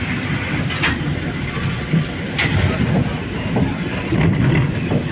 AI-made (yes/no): no